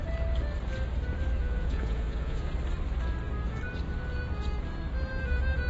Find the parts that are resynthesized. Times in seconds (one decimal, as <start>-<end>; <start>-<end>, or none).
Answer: 1.4-2.5